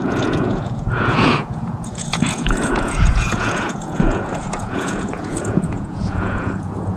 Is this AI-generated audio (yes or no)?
yes